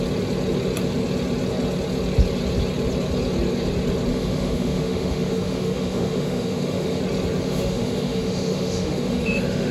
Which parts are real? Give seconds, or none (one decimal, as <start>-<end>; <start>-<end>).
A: 0.0-4.1; 7.0-7.4